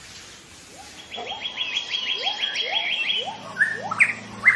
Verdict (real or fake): real